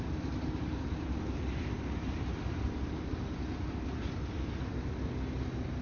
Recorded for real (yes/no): yes